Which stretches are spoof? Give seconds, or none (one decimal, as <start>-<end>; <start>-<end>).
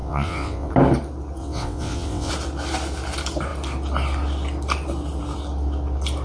0.0-0.7; 1.4-2.3